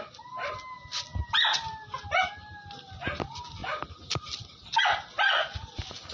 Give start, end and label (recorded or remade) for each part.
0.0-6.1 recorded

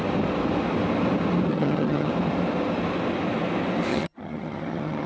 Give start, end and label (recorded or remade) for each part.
0.0-1.5 recorded; 1.5-2.1 remade; 2.1-3.9 recorded; 3.9-5.1 remade

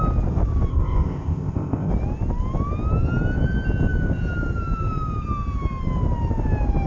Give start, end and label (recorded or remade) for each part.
0.0-0.7 recorded; 0.7-1.9 remade; 1.9-6.9 recorded

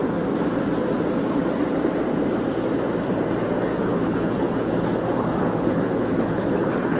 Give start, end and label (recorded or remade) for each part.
0.0-3.8 recorded; 3.8-7.0 remade

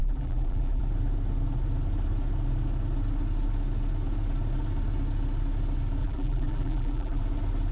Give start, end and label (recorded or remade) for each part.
0.0-0.8 remade; 0.8-6.0 recorded; 6.0-7.2 remade; 7.2-7.7 recorded

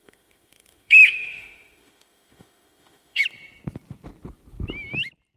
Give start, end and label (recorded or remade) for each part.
0.0-3.2 remade; 3.2-5.4 recorded

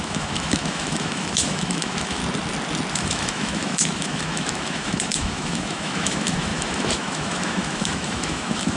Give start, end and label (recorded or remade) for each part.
0.0-2.2 remade; 2.2-2.9 recorded; 2.9-8.8 remade

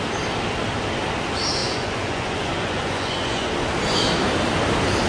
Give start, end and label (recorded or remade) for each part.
0.0-1.6 recorded; 1.6-3.5 remade; 3.5-5.1 recorded